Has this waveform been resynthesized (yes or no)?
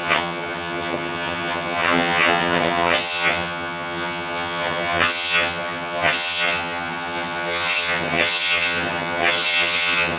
yes